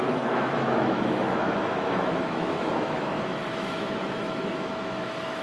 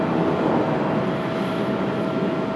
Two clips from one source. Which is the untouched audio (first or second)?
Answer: second